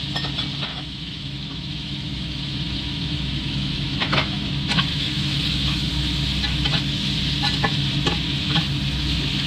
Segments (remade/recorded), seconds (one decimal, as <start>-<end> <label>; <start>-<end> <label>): 0.0-0.7 recorded; 0.7-4.5 remade; 4.5-4.9 recorded; 4.9-5.9 remade; 5.9-9.5 recorded